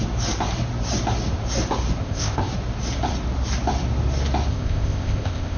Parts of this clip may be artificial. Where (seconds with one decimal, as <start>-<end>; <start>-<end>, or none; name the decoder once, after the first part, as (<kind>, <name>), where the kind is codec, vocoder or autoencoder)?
2.0-2.5 (codec, ZipCodec); 4.5-5.6